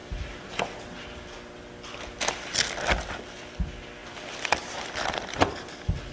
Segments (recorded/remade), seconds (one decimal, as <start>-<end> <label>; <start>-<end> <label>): 0.0-4.0 recorded; 4.0-5.1 remade; 5.1-6.1 recorded